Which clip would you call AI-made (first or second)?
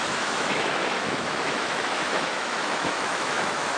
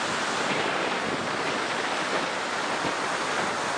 first